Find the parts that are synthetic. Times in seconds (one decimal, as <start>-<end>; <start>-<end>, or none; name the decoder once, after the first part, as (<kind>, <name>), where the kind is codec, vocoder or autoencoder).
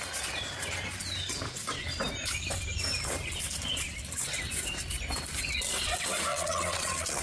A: 6.3-7.2 (vocoder, Vocos)